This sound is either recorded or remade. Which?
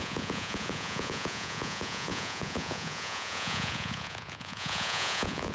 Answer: remade